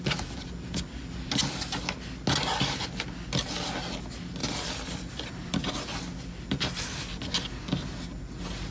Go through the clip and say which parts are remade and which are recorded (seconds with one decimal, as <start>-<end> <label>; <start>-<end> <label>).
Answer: 0.0-4.4 recorded; 4.4-5.7 remade; 5.7-8.7 recorded